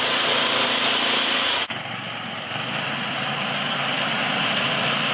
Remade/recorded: recorded